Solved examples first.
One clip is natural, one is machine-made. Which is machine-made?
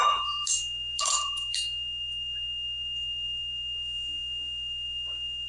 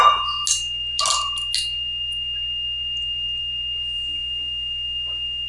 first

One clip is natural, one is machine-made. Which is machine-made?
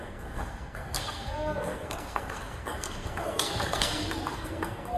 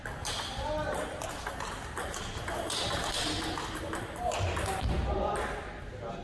first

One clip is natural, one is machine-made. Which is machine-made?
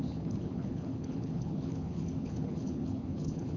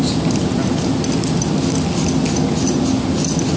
first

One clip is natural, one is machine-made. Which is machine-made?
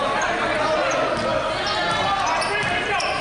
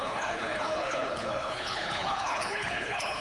second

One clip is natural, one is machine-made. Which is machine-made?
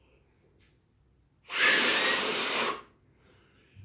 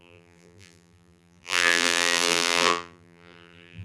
second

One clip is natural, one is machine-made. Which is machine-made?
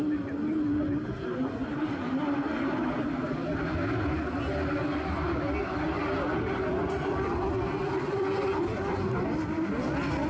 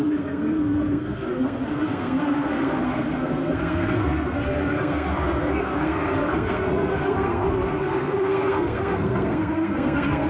second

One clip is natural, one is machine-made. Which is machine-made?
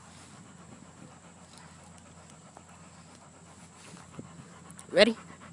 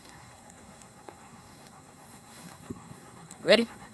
second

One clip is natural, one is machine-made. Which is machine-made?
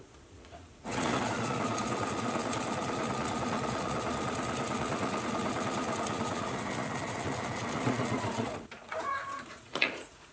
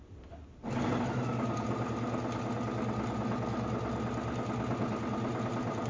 first